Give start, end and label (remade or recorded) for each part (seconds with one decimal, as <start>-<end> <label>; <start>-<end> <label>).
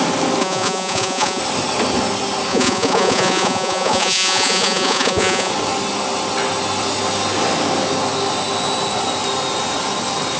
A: 0.0-0.4 recorded; 0.4-1.4 remade; 1.4-2.5 recorded; 2.5-5.5 remade; 5.5-10.4 recorded